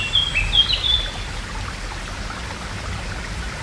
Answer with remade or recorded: recorded